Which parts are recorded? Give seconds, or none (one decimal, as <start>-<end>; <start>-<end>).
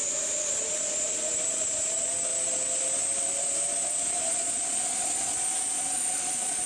0.5-6.7